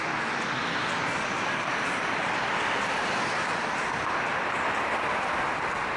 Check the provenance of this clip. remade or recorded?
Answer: recorded